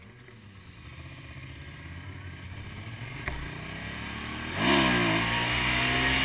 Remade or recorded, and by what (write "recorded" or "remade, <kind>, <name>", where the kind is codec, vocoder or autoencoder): recorded